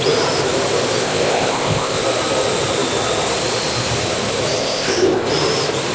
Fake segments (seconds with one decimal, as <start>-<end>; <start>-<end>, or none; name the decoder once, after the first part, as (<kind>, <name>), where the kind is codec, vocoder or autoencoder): 1.0-2.0 (codec, ZipCodec); 4.6-5.3